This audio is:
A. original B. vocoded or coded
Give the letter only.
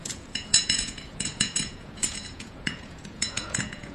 B